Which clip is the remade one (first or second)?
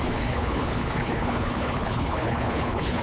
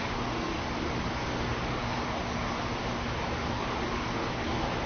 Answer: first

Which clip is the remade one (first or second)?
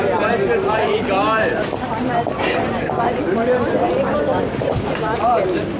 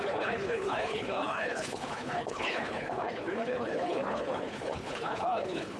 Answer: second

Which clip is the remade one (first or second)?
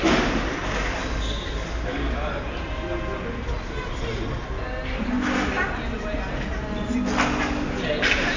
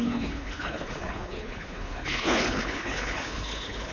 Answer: second